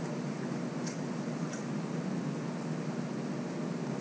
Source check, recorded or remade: recorded